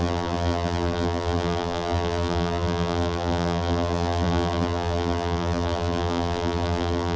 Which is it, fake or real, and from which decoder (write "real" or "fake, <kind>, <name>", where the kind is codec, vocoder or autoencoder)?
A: fake, vocoder, BigVGAN v2